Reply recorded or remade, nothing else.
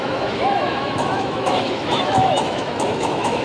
remade